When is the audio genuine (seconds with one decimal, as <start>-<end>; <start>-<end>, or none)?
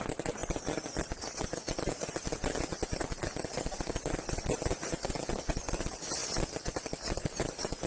0.0-7.9